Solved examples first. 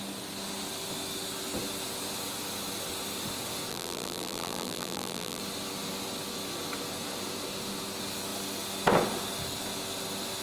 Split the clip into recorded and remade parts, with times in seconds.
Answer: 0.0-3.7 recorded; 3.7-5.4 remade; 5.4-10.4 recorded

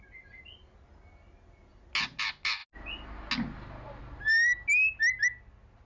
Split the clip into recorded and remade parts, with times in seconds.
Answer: 0.0-5.9 recorded

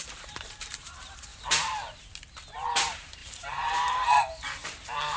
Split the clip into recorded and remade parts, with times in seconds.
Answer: 0.0-1.3 remade; 1.3-2.5 recorded; 2.5-5.2 remade

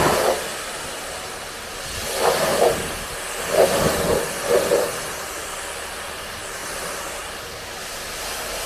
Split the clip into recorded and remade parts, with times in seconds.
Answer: 0.0-2.5 recorded; 2.5-3.2 remade; 3.2-6.6 recorded; 6.6-7.3 remade; 7.3-8.7 recorded

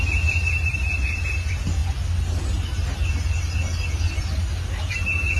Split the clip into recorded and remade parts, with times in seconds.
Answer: 0.0-5.4 recorded

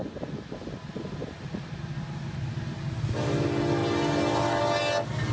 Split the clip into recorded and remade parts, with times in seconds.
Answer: 0.0-5.3 recorded

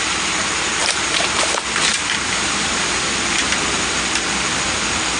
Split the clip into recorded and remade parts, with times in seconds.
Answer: 0.0-0.8 recorded; 0.8-3.1 remade; 3.1-5.2 recorded